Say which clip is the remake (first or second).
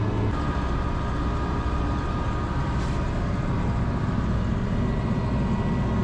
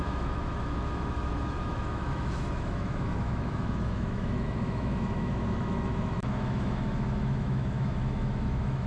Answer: second